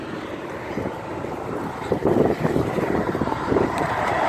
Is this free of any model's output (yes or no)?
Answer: no